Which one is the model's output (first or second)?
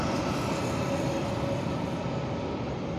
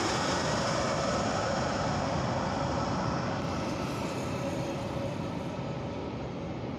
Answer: second